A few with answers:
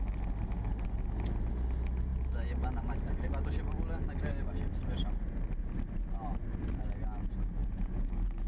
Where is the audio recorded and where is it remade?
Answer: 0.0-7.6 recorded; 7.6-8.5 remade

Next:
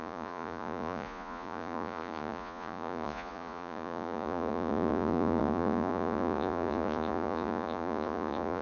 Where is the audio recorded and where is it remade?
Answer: 0.0-8.6 remade